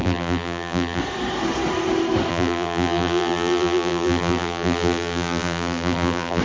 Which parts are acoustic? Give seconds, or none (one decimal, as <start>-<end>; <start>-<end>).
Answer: 1.0-2.3